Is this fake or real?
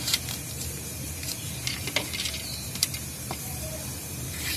fake